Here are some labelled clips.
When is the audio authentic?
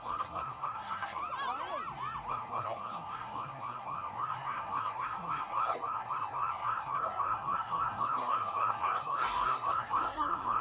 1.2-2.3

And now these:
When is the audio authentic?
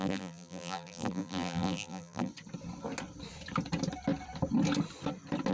2.3-5.5